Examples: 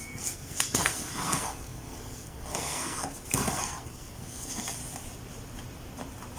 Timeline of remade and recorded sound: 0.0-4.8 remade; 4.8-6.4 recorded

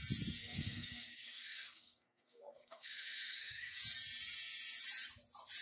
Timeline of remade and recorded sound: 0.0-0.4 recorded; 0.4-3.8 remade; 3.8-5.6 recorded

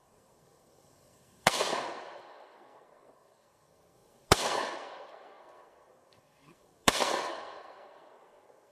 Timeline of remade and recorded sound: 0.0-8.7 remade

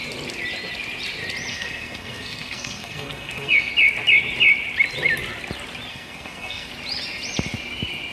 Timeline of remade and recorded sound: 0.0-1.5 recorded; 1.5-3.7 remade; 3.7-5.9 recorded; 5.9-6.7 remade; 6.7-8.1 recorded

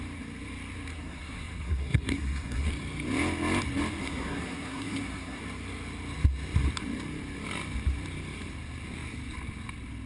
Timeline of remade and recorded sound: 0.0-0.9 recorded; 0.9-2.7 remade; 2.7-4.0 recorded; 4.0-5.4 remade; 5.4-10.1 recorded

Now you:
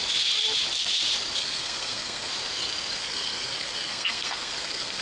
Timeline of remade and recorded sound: 0.0-1.4 recorded; 1.4-2.3 remade; 2.3-3.0 recorded; 3.0-5.0 remade